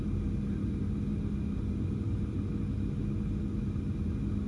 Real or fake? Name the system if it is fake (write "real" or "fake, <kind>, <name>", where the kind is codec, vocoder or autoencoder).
real